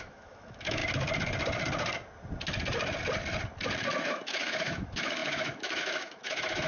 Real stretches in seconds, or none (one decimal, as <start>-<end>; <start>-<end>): 0.8-4.1